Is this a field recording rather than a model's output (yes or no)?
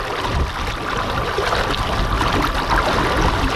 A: yes